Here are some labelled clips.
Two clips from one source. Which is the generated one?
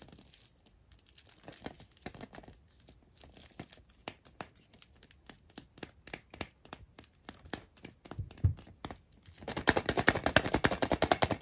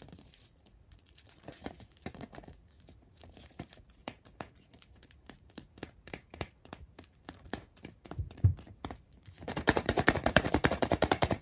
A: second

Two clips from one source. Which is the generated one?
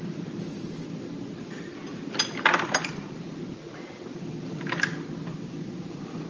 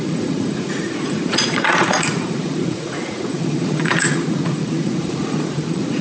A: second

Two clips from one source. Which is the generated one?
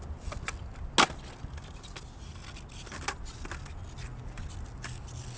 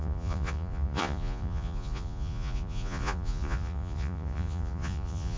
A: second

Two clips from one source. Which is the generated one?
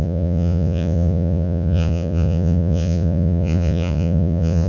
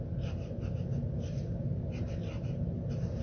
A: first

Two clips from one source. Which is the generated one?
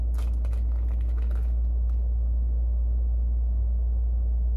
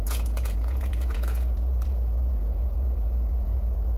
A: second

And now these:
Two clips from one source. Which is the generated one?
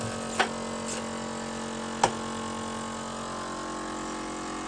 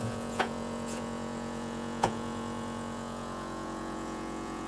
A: second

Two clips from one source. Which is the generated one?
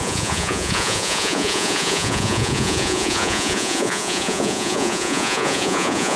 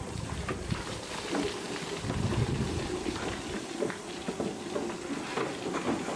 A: first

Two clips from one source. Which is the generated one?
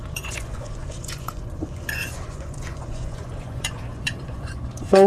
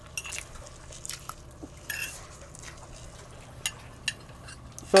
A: first